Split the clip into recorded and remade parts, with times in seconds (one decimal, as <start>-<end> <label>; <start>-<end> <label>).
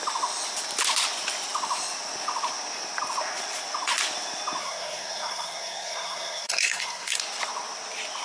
0.0-4.6 recorded; 4.6-7.2 remade; 7.2-8.2 recorded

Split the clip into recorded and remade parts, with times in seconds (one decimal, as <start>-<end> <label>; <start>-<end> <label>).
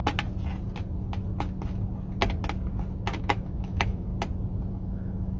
0.0-3.2 recorded; 3.2-4.1 remade; 4.1-4.7 recorded; 4.7-5.4 remade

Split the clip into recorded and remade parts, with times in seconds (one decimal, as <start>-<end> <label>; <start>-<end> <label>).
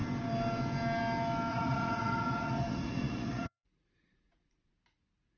0.0-1.5 recorded; 1.5-4.7 remade; 4.7-5.4 recorded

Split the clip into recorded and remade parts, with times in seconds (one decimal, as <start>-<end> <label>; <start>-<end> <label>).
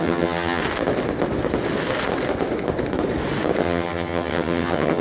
0.0-0.6 remade; 0.6-3.6 recorded; 3.6-5.0 remade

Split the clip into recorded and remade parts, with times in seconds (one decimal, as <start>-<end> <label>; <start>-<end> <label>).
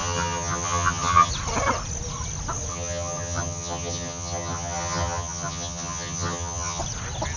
0.0-1.3 remade; 1.3-2.7 recorded; 2.7-6.8 remade; 6.8-7.4 recorded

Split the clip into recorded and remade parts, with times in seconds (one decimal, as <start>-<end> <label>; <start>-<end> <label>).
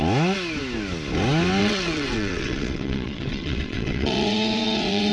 0.0-1.6 recorded; 1.6-5.1 remade